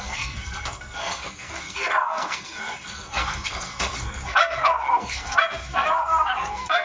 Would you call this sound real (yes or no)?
no